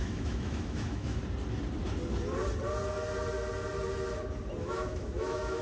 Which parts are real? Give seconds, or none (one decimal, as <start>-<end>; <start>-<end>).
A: 1.2-4.6

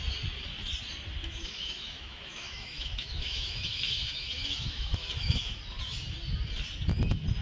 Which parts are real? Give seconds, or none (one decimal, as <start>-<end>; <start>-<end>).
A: 0.0-1.2; 5.6-7.4

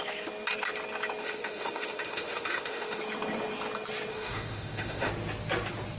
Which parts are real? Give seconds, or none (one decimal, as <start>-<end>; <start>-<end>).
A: 0.0-1.2; 3.0-4.1; 5.1-6.0

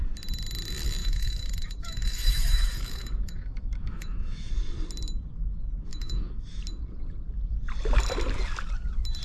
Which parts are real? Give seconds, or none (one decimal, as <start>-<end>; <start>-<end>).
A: 0.0-1.0; 4.5-5.9; 6.6-9.2